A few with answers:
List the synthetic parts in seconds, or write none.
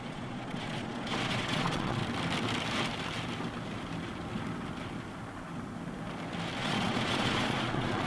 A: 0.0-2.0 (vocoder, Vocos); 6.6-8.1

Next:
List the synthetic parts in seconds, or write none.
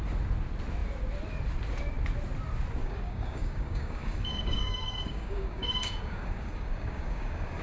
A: 2.8-7.6 (codec, DAC)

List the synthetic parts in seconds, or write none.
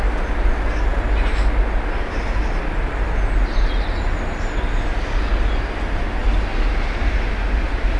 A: none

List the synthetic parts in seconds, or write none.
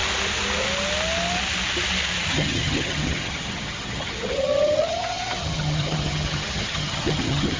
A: 2.3-7.6 (vocoder, HiFi-GAN)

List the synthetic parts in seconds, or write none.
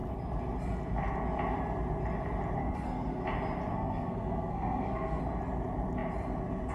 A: 2.6-3.2 (codec, SNAC); 3.7-5.2